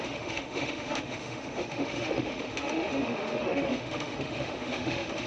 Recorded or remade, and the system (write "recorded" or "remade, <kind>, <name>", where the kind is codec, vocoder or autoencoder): remade, autoencoder, DAC-VAE